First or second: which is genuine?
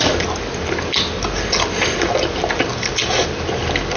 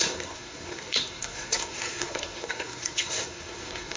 first